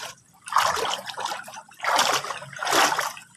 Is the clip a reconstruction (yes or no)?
yes